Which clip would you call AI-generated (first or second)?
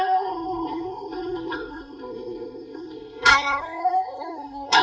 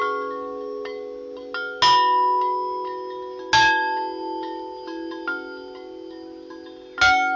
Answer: first